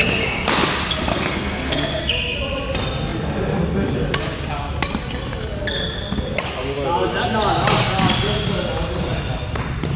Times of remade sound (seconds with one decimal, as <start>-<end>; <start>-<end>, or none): 1.1-2.0

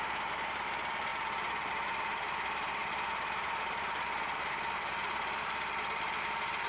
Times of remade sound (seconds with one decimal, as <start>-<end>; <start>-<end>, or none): 0.0-6.7

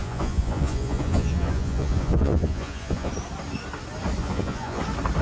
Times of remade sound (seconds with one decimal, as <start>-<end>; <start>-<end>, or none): 0.0-3.1; 4.2-4.8

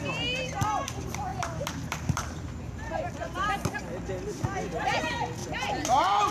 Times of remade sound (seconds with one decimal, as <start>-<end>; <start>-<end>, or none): 1.3-3.8; 5.4-6.3

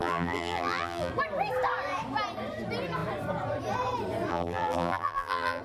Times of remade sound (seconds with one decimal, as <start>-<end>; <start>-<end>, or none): 0.0-1.1; 4.3-5.6

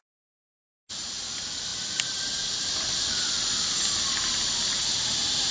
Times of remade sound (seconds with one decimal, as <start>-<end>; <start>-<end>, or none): none

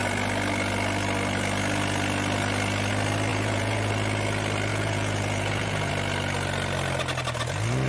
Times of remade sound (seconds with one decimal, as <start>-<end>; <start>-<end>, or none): 3.3-3.9; 4.7-5.9

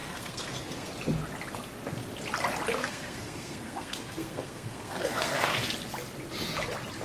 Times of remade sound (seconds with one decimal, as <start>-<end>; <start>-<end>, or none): 0.0-0.9; 2.8-5.7